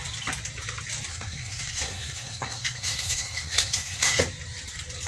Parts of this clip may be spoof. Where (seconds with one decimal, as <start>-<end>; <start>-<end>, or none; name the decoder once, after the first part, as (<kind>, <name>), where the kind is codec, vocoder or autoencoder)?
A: 1.1-4.2 (codec, SNAC)